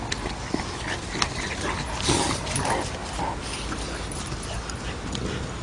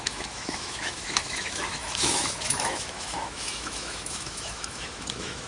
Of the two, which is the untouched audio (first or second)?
first